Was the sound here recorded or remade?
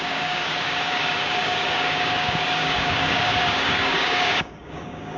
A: remade